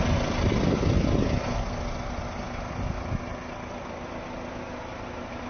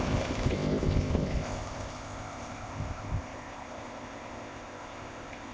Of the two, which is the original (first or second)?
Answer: first